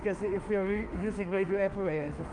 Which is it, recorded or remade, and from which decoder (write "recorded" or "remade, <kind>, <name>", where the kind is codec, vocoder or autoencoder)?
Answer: remade, autoencoder, DAC-VAE